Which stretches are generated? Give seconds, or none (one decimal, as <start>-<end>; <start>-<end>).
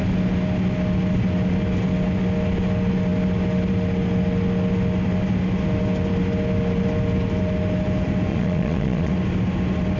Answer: 8.3-9.1